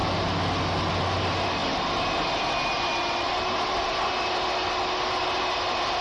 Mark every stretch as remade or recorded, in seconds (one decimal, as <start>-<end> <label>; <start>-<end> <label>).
0.0-6.0 recorded